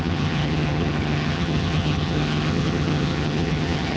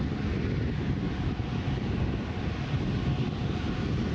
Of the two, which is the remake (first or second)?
first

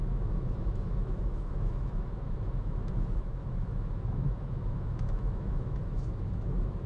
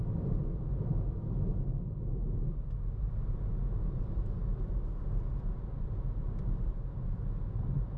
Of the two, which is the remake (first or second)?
first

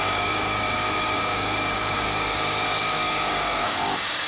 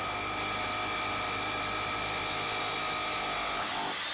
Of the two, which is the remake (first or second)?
first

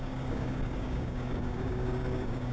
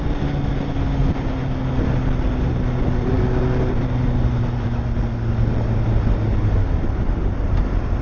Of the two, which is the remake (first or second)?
first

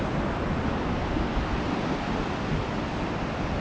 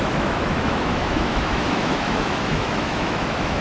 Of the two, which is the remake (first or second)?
second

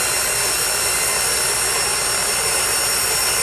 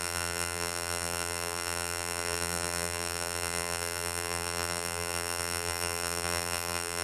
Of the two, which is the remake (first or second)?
second